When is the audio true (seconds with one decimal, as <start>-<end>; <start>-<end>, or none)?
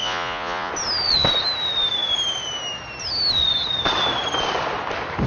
0.7-5.3